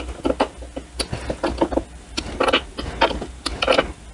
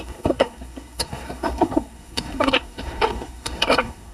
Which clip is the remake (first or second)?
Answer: second